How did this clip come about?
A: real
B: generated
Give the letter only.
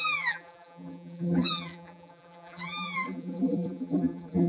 B